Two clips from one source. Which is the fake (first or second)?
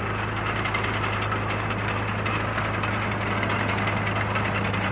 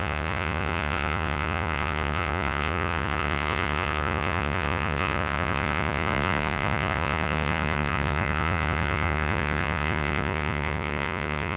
second